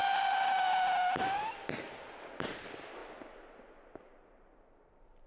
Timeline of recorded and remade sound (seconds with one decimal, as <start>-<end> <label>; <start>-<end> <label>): 0.0-5.3 recorded